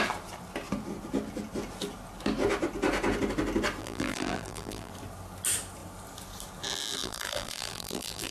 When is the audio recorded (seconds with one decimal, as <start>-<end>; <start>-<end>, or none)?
0.0-3.8; 4.9-7.0